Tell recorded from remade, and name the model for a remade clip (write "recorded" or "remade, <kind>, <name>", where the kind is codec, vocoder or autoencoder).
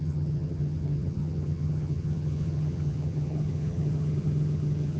remade, vocoder, HiFi-GAN